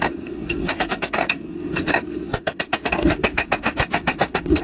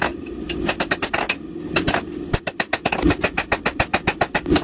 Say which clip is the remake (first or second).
first